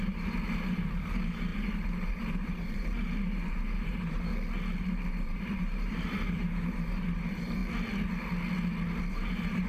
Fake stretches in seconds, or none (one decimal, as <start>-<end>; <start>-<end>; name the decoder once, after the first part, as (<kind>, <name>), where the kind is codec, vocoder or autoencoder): 0.0-4.3 (vocoder, BigVGAN v2); 5.1-7.6; 9.1-9.7